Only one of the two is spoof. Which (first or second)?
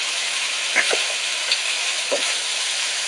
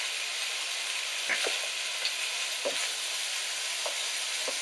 first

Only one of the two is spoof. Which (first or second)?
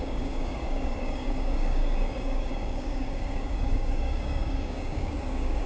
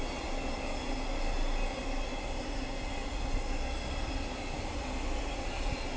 first